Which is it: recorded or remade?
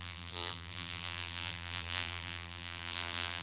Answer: remade